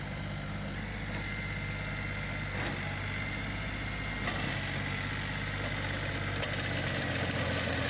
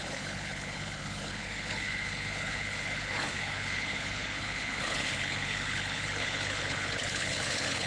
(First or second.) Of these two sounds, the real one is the first